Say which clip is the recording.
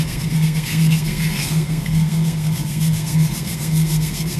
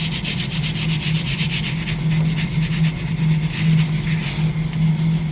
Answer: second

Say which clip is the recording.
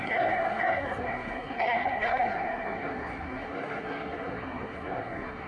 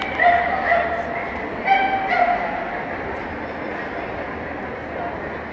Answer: second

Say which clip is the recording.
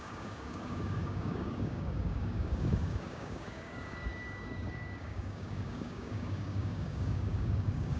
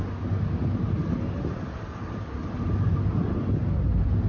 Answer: second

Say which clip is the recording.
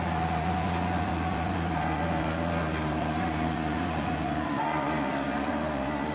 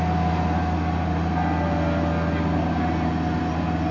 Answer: second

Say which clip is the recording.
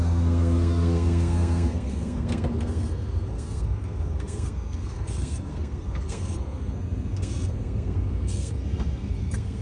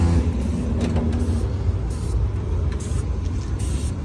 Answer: second